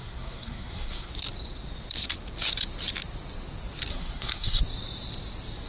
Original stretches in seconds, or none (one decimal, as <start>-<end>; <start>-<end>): 1.1-3.9; 4.6-5.7